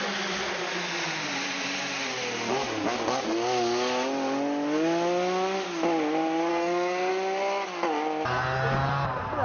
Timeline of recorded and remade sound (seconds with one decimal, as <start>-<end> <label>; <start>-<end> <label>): 0.0-6.5 recorded; 6.5-7.1 remade; 7.1-9.4 recorded